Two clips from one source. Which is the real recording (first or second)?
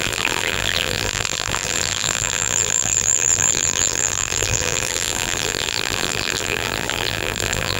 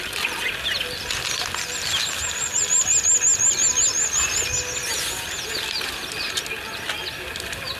second